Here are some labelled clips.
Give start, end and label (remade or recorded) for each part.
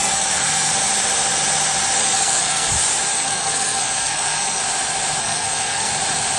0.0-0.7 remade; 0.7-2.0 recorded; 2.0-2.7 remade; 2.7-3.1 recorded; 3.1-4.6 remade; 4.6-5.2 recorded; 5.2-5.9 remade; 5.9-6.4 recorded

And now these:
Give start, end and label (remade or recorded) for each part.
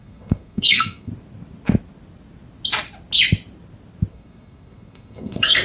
0.0-1.1 remade; 1.1-4.1 recorded; 4.1-5.6 remade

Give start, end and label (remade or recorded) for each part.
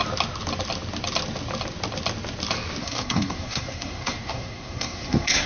0.0-2.8 recorded; 2.8-5.5 remade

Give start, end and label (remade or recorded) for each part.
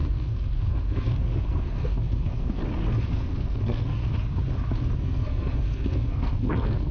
0.0-2.6 remade; 2.6-3.1 recorded; 3.1-4.0 remade; 4.0-5.0 recorded; 5.0-6.9 remade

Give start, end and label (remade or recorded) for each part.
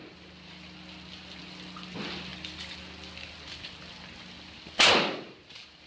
0.0-5.9 recorded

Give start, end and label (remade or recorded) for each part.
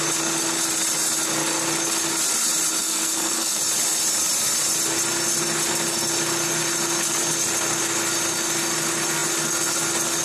0.0-2.8 recorded; 2.8-3.6 remade; 3.6-10.2 recorded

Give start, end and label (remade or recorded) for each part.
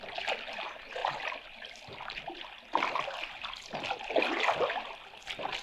0.0-5.6 recorded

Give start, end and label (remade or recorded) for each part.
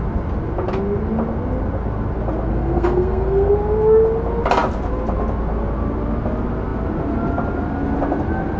0.0-2.5 recorded; 2.5-3.5 remade; 3.5-8.6 recorded